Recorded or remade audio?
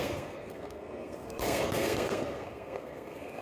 remade